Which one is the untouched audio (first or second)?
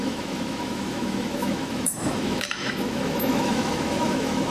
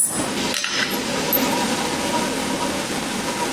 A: second